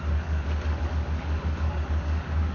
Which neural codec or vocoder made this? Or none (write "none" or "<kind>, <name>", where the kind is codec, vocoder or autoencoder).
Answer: codec, DAC